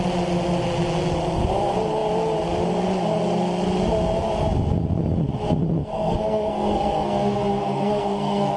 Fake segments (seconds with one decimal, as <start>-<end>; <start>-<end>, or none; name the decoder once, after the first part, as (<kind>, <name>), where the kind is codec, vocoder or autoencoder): 5.8-8.6 (codec, SNAC)